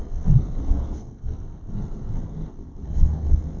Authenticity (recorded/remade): remade